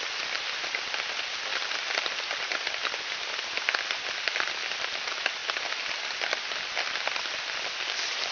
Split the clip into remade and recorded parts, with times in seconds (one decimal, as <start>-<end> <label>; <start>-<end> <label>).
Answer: 0.0-8.3 recorded